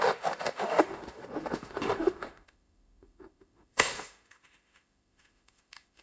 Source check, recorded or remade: remade